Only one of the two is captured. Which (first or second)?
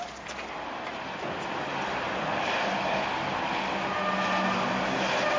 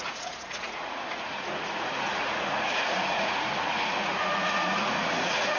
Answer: first